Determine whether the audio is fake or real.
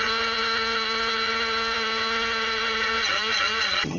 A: fake